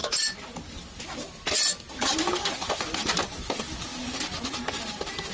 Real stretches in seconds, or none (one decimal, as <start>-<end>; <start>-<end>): 0.0-5.3